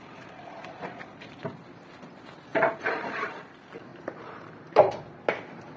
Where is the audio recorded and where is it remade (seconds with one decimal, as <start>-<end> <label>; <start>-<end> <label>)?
0.0-2.5 recorded; 2.5-3.3 remade; 3.3-3.9 recorded; 3.9-5.0 remade; 5.0-5.8 recorded